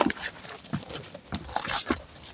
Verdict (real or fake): fake